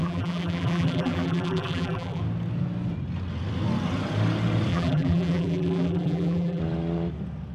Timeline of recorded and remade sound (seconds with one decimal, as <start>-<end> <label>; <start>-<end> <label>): 0.0-2.2 remade; 2.2-4.7 recorded; 4.7-6.6 remade; 6.6-7.5 recorded